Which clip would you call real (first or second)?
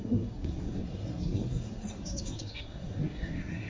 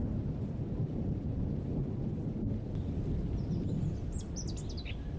second